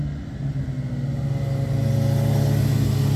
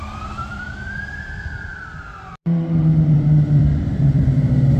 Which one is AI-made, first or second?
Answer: second